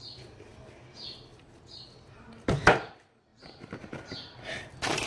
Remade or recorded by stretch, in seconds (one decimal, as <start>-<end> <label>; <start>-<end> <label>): 0.0-3.3 recorded; 3.3-4.6 remade; 4.6-5.1 recorded